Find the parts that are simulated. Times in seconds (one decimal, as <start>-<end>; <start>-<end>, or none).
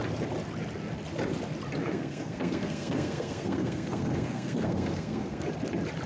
1.8-5.5